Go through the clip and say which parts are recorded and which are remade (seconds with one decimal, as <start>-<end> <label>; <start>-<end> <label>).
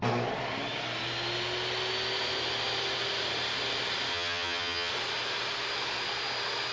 0.0-4.1 recorded; 4.1-4.9 remade; 4.9-6.7 recorded